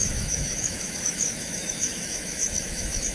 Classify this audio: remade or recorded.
remade